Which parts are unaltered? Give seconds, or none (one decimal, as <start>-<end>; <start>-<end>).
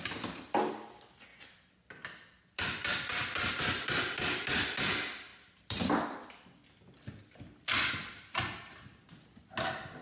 0.0-10.0